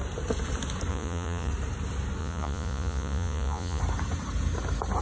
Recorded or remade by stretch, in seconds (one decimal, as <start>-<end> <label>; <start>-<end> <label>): 0.0-0.9 recorded; 0.9-1.5 remade; 1.5-2.2 recorded; 2.2-3.8 remade; 3.8-5.0 recorded